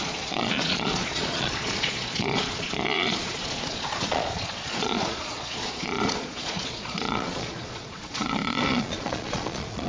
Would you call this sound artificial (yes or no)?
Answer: yes